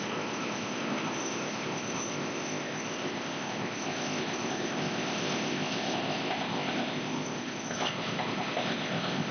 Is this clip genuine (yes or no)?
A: no